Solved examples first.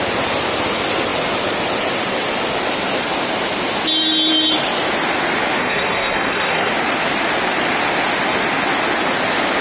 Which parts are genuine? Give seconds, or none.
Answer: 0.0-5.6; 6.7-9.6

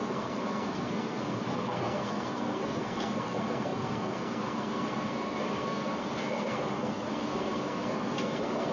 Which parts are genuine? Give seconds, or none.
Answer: none

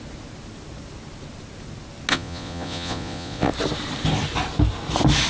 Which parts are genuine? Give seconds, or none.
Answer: 0.0-2.1; 3.5-5.3

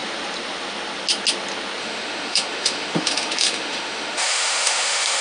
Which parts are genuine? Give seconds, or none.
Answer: 0.0-1.8

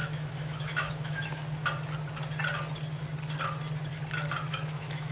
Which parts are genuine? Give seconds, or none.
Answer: 1.4-4.5

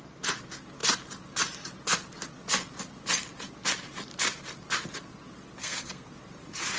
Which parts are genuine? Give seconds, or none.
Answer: 0.0-5.6; 6.1-6.8

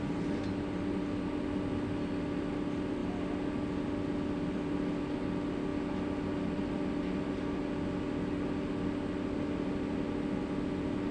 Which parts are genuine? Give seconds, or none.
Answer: 0.0-11.1

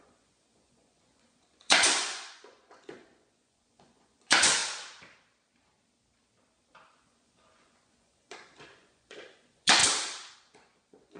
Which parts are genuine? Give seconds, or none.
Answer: 4.6-6.9; 9.8-10.4